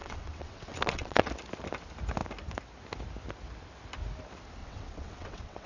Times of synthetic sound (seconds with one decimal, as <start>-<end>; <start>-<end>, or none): 0.0-1.3; 4.6-5.7